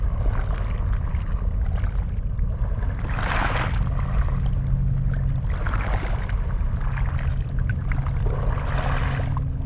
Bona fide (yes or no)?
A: yes